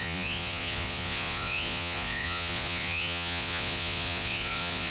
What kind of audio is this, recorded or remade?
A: remade